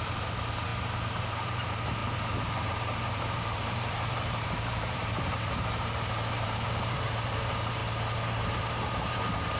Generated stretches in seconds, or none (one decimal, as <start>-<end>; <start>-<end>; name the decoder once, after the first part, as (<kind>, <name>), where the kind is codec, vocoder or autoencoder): 0.0-9.6 (vocoder, BigVGAN v2)